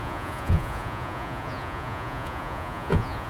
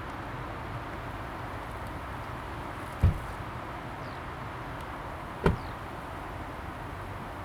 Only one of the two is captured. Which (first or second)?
second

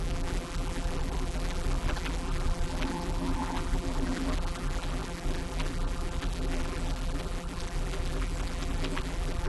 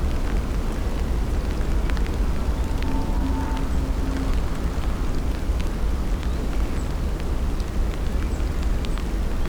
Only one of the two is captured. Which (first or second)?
second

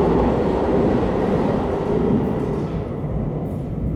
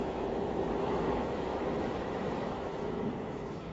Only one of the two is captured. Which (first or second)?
first